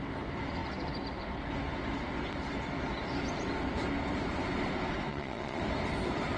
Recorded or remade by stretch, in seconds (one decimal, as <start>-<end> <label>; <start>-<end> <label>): 0.0-5.1 recorded; 5.1-5.6 remade; 5.6-6.4 recorded